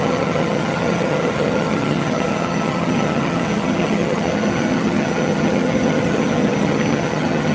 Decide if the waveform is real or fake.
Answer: fake